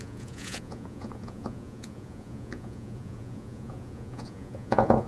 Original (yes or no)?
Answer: no